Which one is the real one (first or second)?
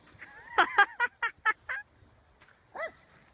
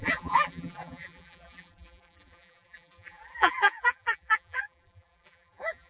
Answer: first